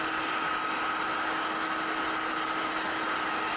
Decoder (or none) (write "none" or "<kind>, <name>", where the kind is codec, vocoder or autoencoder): none